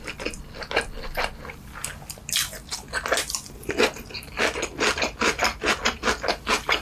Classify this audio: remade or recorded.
recorded